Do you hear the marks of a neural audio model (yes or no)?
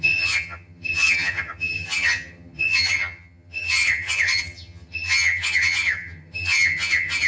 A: yes